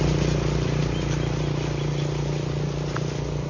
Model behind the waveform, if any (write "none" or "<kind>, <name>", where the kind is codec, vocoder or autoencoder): none